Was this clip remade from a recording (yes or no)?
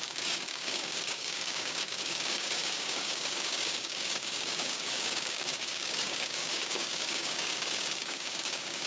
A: yes